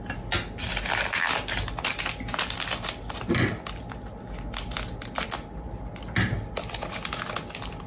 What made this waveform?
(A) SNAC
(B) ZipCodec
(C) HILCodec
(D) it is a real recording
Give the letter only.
D